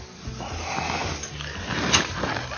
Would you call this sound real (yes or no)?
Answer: yes